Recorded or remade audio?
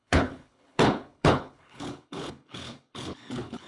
remade